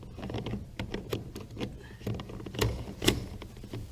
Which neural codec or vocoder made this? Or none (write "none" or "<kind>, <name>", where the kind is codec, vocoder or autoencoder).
none